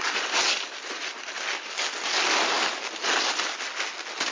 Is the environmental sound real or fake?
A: real